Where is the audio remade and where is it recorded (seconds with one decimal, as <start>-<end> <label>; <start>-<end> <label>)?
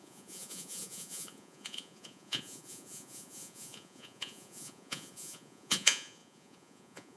0.0-7.2 remade